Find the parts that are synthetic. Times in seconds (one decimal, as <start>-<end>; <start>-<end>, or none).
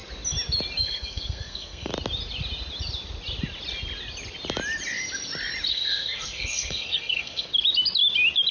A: 0.8-1.9; 5.7-7.5